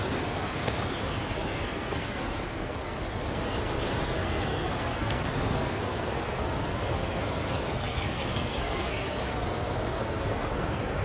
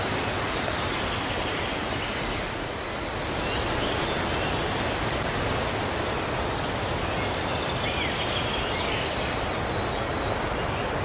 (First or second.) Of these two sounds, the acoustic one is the second